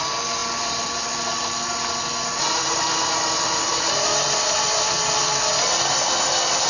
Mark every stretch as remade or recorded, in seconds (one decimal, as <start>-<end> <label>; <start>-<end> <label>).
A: 0.0-6.7 recorded